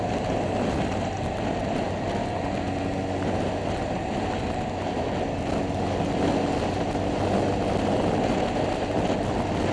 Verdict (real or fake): real